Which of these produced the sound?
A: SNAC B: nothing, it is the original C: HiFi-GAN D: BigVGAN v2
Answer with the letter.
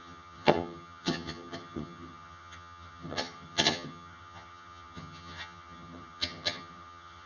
C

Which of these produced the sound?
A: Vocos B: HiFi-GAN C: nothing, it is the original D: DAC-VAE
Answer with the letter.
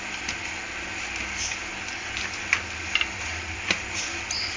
C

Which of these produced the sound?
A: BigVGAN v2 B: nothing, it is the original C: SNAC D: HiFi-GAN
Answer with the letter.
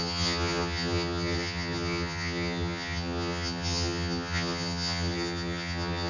D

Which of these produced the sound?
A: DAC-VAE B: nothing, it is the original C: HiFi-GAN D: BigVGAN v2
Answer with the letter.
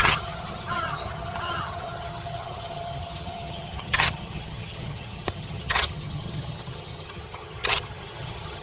C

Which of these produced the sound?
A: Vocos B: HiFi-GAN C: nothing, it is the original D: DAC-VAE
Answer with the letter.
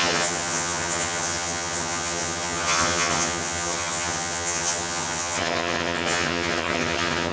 B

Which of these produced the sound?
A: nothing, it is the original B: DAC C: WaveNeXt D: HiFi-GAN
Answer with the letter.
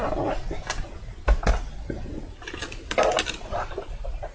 A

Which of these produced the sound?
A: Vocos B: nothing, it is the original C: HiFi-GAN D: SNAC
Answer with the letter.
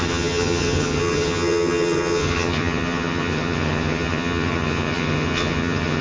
C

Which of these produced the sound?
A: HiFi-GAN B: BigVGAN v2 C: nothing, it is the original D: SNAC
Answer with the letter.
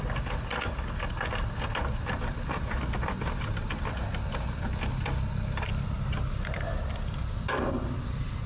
C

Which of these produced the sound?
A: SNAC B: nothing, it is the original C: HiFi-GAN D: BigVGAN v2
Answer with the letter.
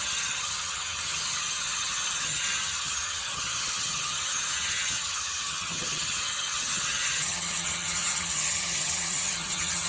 C